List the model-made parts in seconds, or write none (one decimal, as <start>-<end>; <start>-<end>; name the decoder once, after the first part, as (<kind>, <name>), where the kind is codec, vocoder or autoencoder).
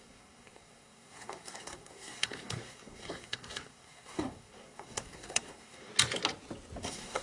0.0-5.9 (codec, SNAC); 6.8-7.2